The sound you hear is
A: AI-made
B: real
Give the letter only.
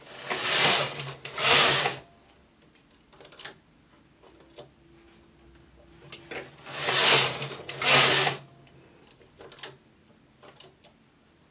B